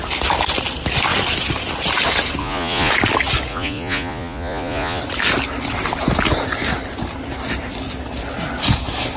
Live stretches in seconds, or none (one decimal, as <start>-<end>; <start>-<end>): 0.0-2.4; 2.9-3.5; 5.0-9.2